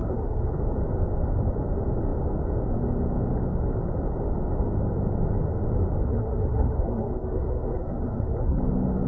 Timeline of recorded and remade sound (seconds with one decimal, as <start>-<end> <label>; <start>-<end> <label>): 0.0-0.6 remade; 0.6-6.0 recorded; 6.0-8.6 remade; 8.6-9.1 recorded